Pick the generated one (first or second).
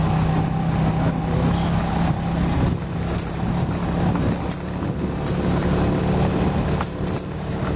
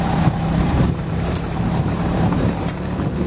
second